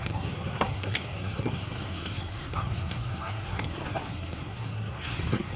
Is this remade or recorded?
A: remade